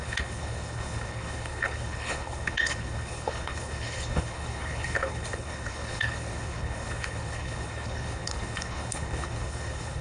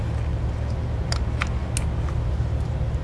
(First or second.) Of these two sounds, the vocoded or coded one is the first